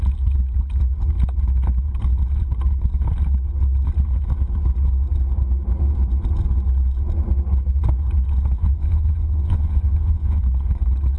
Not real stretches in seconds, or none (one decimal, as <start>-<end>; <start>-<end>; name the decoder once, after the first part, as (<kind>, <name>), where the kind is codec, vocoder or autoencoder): 8.6-10.4 (vocoder, Vocos)